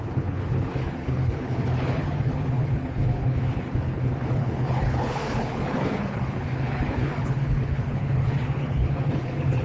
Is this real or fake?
fake